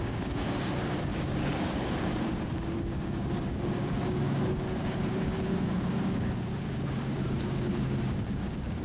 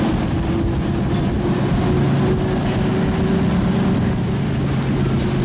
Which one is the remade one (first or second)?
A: first